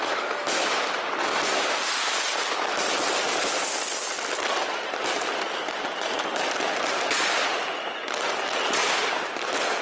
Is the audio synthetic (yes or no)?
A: no